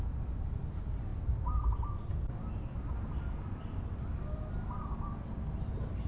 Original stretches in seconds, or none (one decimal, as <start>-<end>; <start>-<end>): 0.0-6.1